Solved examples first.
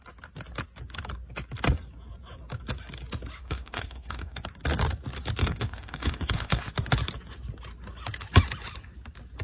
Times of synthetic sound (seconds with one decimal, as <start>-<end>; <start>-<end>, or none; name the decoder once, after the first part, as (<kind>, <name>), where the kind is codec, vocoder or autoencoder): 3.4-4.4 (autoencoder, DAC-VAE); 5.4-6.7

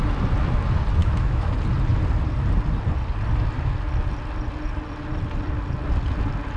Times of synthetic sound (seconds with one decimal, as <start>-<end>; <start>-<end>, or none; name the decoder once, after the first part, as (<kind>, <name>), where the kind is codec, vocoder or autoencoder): 1.0-1.5 (autoencoder, DAC-VAE)

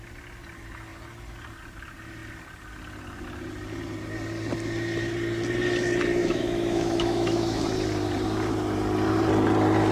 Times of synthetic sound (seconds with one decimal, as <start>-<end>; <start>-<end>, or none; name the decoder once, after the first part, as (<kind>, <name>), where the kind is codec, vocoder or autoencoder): 6.2-7.6 (autoencoder, DAC-VAE)

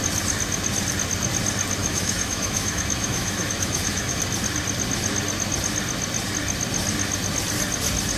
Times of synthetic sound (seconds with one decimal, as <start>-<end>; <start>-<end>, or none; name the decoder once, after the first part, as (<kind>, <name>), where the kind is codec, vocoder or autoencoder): 1.8-4.2 (autoencoder, DAC-VAE)